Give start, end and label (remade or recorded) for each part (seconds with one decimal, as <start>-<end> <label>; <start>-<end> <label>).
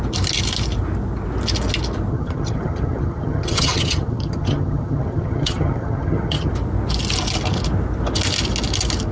0.0-2.1 recorded; 2.1-6.5 remade; 6.5-9.1 recorded